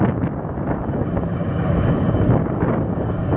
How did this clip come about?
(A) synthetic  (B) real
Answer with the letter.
B